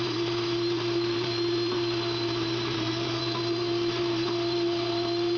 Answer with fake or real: fake